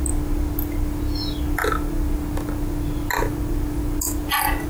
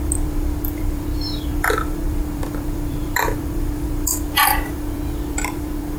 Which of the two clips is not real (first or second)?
second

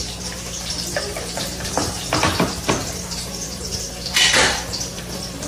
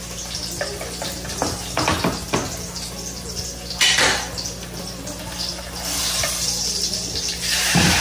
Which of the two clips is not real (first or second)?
first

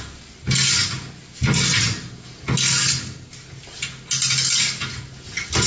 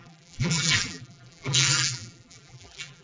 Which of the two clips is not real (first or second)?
second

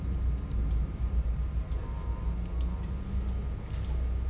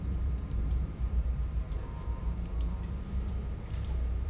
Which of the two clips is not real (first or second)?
second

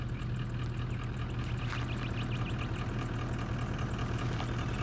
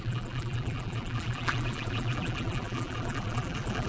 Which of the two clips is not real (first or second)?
second